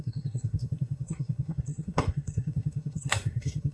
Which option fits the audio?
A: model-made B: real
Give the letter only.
A